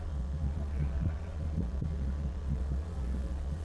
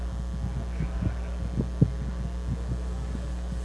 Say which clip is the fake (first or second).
first